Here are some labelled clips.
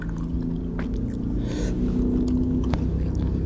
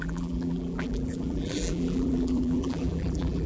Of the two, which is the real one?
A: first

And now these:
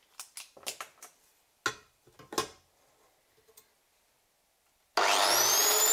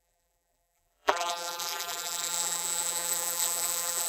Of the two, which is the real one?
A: first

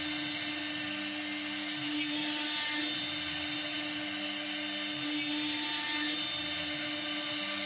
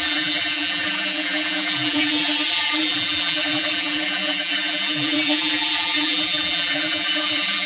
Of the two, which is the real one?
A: first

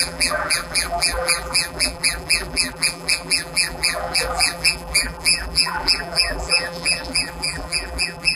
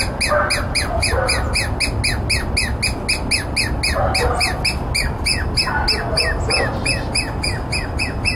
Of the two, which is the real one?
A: second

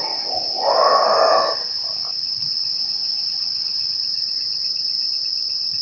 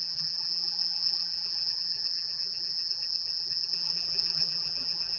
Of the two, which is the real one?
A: first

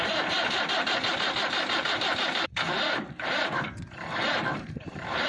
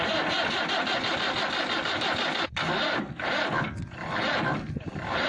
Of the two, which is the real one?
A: second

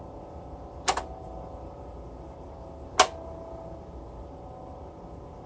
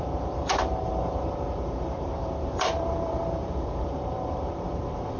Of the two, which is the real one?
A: first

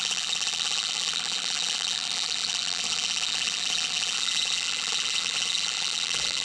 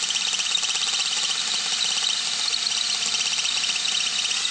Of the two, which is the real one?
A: second